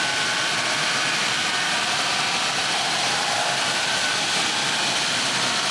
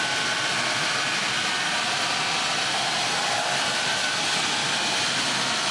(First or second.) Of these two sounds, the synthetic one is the first